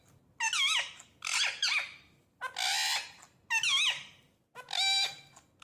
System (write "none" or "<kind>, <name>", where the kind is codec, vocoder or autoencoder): none